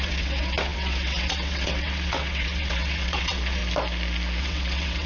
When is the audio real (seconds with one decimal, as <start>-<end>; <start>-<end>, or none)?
3.6-4.4